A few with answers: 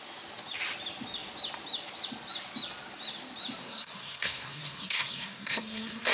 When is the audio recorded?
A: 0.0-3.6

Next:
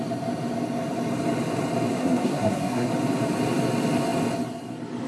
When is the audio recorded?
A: 0.0-1.9; 2.9-5.1

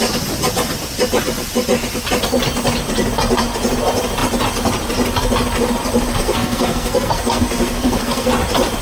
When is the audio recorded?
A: 0.0-6.1; 8.3-8.8

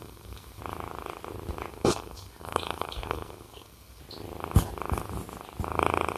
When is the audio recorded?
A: 0.6-1.7; 4.0-6.2

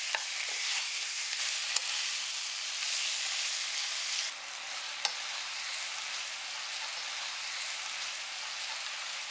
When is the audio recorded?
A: 0.0-0.5; 1.4-9.3